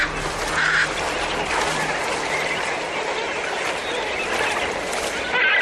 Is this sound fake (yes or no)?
no